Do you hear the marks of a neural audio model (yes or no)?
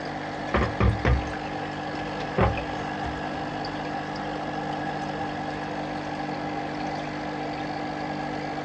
no